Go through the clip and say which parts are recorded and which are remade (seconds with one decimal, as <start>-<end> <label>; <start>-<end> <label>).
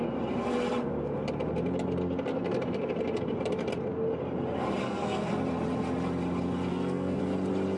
0.0-4.8 recorded; 4.8-5.3 remade; 5.3-6.7 recorded; 6.7-7.2 remade; 7.2-7.8 recorded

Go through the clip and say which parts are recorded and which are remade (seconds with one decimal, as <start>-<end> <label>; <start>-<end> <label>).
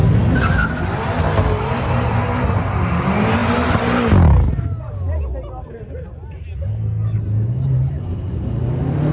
0.0-6.7 recorded; 6.7-7.2 remade; 7.2-9.1 recorded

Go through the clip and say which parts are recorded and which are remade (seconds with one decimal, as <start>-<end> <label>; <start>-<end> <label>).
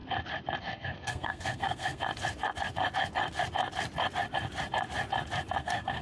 0.0-0.6 recorded; 0.6-2.0 remade; 2.0-5.6 recorded; 5.6-6.0 remade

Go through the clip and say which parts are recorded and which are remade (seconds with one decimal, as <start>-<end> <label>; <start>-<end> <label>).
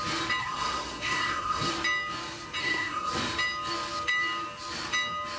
0.0-0.4 recorded; 0.4-1.7 remade; 1.7-2.6 recorded; 2.6-3.1 remade; 3.1-5.4 recorded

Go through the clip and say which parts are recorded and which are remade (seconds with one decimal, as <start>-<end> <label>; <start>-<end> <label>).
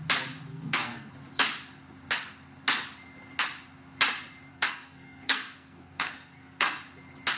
0.0-0.5 recorded; 0.5-1.1 remade; 1.1-4.5 recorded; 4.5-6.8 remade; 6.8-7.4 recorded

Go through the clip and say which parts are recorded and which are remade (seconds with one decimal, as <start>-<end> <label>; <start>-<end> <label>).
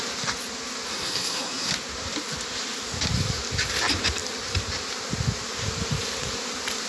0.0-0.9 recorded; 0.9-1.7 remade; 1.7-6.9 recorded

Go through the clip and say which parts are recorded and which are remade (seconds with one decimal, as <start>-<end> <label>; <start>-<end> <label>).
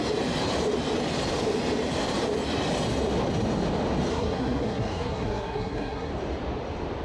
0.0-4.1 recorded; 4.1-6.1 remade; 6.1-7.0 recorded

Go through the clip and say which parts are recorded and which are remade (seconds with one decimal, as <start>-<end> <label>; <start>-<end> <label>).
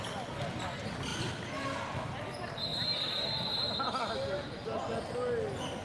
0.0-5.8 recorded